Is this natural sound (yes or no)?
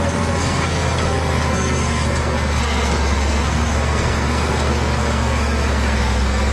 no